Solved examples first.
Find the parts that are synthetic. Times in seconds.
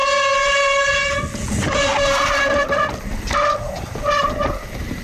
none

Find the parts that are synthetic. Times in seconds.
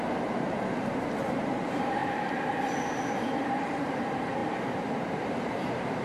0.0-2.0 (vocoder, BigVGAN v2); 3.1-4.4; 5.3-6.0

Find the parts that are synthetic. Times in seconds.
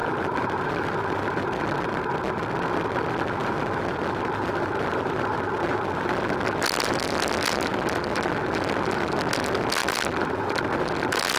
0.0-1.9 (vocoder, BigVGAN v2); 3.4-6.1; 9.8-10.6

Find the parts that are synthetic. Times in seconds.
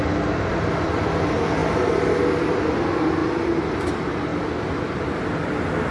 0.5-1.1 (vocoder, BigVGAN v2); 3.2-3.9; 4.3-5.2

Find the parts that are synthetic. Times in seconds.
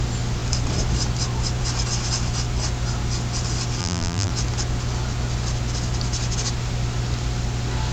3.8-4.3 (vocoder, BigVGAN v2)